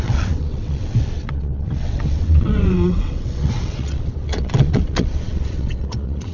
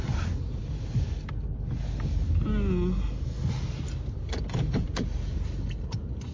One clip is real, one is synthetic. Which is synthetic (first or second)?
first